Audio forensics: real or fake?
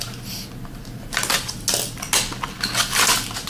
real